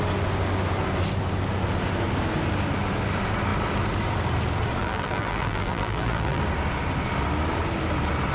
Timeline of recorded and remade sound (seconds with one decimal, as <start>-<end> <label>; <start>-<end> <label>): 0.0-4.8 recorded; 4.8-6.4 remade; 6.4-8.3 recorded